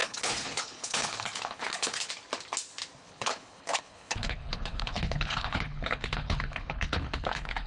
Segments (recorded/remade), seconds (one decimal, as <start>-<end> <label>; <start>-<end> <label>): 0.0-2.1 remade; 2.1-3.0 recorded; 3.0-7.7 remade